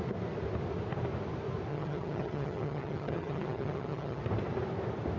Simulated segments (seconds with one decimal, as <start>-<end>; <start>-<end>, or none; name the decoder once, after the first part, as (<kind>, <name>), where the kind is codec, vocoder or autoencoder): 1.7-4.2 (vocoder, HiFi-GAN)